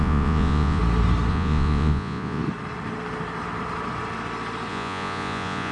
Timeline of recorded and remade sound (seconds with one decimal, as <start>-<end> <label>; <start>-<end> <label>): 0.0-0.8 remade; 0.8-1.3 recorded; 1.3-2.4 remade; 2.4-4.7 recorded; 4.7-5.7 remade